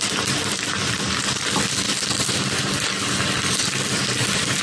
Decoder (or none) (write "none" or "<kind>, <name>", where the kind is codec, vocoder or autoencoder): none